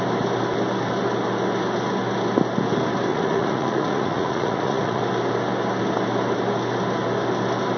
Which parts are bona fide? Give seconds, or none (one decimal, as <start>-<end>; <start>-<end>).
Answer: 0.0-3.1; 5.0-7.8